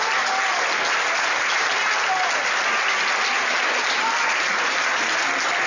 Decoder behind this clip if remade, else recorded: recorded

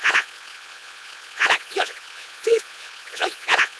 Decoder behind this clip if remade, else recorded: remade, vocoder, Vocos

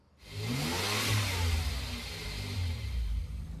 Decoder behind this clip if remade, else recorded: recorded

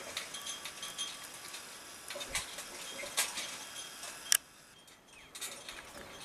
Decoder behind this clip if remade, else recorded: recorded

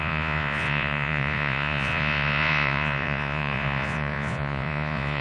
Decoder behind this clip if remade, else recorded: remade, vocoder, Vocos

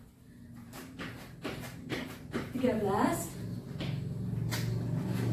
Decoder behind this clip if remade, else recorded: recorded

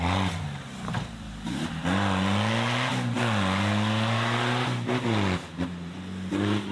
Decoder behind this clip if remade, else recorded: recorded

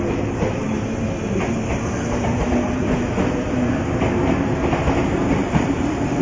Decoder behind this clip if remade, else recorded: remade, vocoder, BigVGAN v2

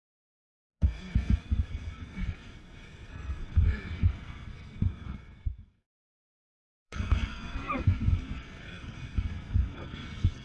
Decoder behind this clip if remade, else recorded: remade, codec, SNAC